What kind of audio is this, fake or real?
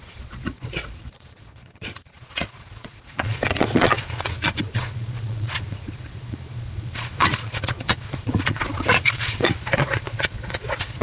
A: fake